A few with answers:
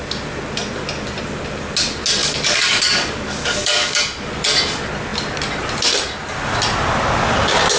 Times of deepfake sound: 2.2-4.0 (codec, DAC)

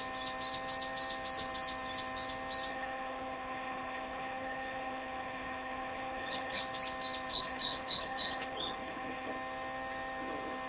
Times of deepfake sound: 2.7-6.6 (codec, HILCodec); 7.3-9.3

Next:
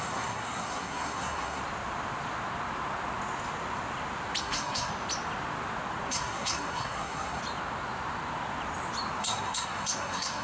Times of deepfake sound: 0.0-1.6 (codec, SNAC); 4.4-4.9; 6.1-7.4; 9.2-10.4